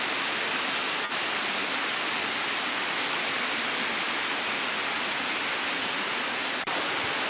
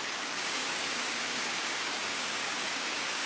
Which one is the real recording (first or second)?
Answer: first